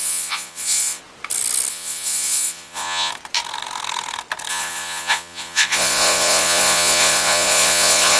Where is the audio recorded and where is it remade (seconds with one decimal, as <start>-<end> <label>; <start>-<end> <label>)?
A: 0.0-1.0 remade; 1.0-1.7 recorded; 1.7-3.1 remade; 3.1-4.5 recorded; 4.5-8.2 remade